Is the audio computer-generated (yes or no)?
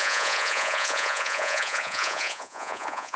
yes